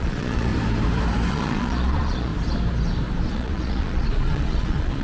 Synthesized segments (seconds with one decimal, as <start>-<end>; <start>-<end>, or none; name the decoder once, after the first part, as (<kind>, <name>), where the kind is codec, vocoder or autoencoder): 0.0-0.5 (vocoder, Vocos); 1.3-2.3; 3.3-5.0